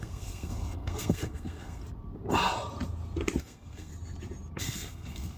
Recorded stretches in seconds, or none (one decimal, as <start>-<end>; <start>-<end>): 1.8-3.4; 3.9-4.6